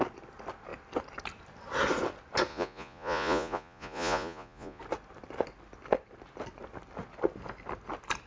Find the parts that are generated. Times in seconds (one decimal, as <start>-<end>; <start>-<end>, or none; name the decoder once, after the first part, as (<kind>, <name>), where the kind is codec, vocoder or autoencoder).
2.5-4.8 (vocoder, Vocos)